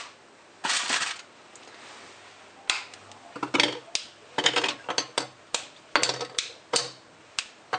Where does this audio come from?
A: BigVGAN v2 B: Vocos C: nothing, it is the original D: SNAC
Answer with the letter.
C